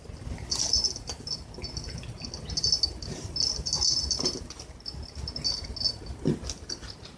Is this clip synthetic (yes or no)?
no